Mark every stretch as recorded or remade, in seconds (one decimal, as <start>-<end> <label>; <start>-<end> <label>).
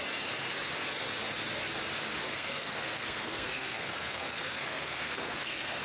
0.0-2.2 recorded; 2.2-5.8 remade